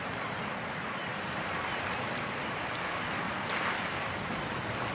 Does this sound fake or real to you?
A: real